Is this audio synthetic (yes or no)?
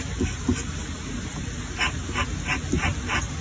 no